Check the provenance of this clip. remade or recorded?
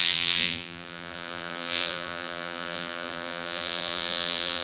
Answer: remade